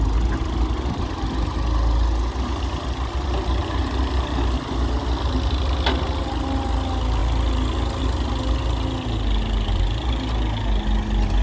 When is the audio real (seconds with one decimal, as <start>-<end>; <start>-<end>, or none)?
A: 0.0-11.4

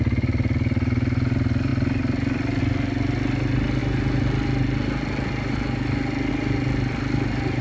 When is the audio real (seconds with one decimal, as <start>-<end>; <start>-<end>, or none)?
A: 0.0-7.6